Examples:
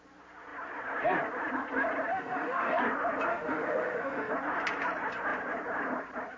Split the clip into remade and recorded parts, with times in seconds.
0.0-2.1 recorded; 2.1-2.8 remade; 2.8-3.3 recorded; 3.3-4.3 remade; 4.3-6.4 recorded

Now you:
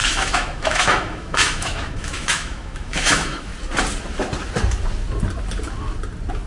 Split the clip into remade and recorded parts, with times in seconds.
0.0-3.5 remade; 3.5-6.5 recorded